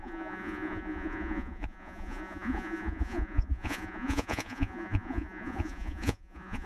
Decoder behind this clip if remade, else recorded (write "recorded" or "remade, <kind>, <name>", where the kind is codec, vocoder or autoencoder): remade, vocoder, Vocos